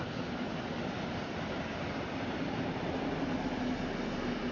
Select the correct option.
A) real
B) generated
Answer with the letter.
A